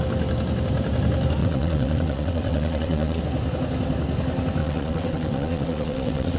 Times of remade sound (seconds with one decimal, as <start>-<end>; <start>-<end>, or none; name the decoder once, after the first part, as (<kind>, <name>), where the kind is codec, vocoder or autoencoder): 1.4-3.2 (vocoder, WaveNeXt); 4.6-6.4